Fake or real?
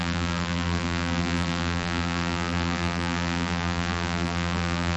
fake